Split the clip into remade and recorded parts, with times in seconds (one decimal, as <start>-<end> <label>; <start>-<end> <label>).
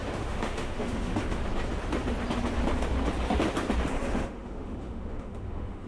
0.0-1.4 remade; 1.4-4.0 recorded; 4.0-5.9 remade